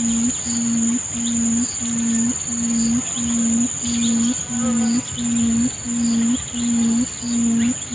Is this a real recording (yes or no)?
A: yes